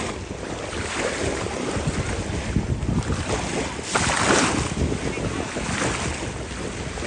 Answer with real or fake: real